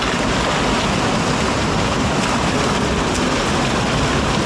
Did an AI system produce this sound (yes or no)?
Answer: no